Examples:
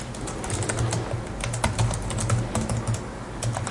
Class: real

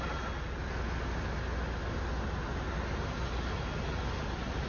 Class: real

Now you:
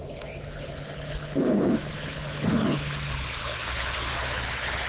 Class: fake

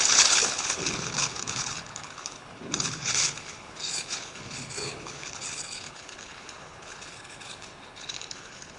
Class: fake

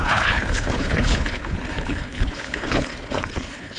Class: fake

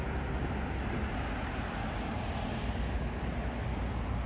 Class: real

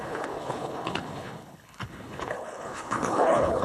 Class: fake